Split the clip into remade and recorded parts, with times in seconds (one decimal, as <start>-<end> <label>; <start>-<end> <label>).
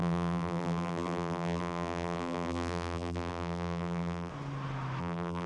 0.0-4.3 remade; 4.3-5.0 recorded; 5.0-5.5 remade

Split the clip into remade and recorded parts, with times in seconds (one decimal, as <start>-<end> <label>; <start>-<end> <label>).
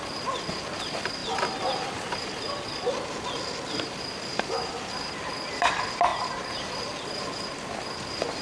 0.0-8.4 recorded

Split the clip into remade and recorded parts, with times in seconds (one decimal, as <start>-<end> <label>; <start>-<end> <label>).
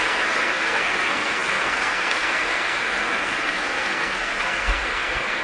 0.0-5.4 remade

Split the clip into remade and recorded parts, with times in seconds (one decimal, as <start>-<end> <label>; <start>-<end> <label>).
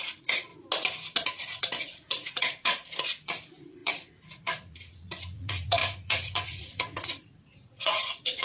0.0-0.5 remade; 0.5-1.6 recorded; 1.6-8.4 remade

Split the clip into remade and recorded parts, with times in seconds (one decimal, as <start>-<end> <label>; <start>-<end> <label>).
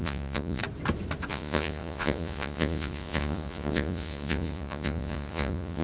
0.0-0.6 remade; 0.6-1.3 recorded; 1.3-5.8 remade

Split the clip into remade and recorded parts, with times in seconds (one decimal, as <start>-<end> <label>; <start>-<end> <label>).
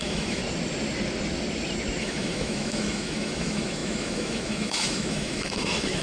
0.0-0.4 remade; 0.4-2.0 recorded; 2.0-6.0 remade